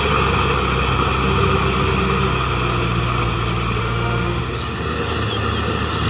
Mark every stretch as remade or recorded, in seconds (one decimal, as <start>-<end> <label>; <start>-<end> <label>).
0.0-3.8 recorded; 3.8-4.4 remade; 4.4-6.1 recorded